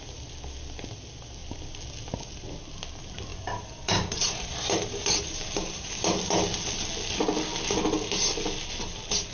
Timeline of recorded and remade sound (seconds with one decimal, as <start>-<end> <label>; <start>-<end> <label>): 0.0-3.3 recorded; 3.3-5.9 remade; 5.9-9.3 recorded